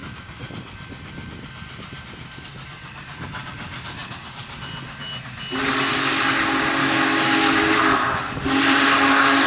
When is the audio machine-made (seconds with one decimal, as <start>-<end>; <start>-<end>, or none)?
0.0-0.5; 6.8-7.8